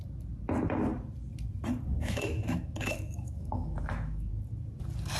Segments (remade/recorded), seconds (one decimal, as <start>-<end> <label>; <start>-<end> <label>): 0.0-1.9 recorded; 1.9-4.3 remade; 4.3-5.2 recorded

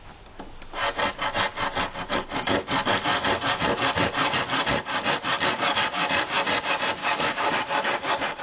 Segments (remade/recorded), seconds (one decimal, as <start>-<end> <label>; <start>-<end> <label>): 0.0-7.0 recorded; 7.0-7.5 remade; 7.5-8.4 recorded

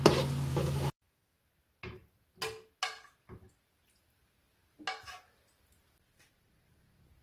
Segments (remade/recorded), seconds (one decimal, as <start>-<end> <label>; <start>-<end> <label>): 0.0-0.5 recorded; 0.5-1.4 remade; 1.4-7.2 recorded

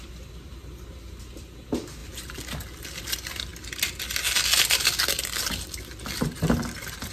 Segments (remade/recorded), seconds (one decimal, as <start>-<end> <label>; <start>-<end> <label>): 0.0-7.1 recorded